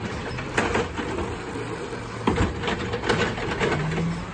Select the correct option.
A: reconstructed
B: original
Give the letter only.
B